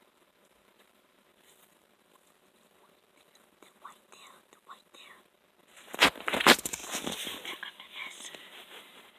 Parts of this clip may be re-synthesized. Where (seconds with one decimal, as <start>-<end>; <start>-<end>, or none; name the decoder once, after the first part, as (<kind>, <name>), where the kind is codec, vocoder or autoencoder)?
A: 0.0-1.3 (vocoder, BigVGAN v2); 6.2-6.8; 8.4-9.2

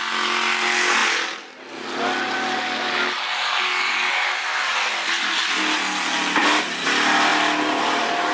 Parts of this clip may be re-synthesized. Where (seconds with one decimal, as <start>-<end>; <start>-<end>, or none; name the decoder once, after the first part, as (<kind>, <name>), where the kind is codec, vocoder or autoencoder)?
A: none

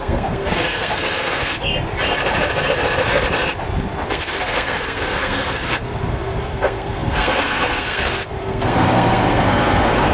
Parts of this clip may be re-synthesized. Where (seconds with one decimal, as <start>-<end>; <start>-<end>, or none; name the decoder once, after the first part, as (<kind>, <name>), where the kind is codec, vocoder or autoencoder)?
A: 0.0-1.7 (codec, SNAC); 4.1-10.1

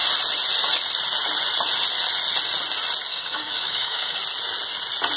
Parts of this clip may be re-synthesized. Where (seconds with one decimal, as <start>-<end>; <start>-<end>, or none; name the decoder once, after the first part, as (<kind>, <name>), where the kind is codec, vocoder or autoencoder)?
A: 3.1-4.2 (codec, DAC)

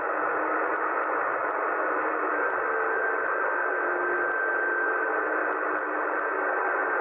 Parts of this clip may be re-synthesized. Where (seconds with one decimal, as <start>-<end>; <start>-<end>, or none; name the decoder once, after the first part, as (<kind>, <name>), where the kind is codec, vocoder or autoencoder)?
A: none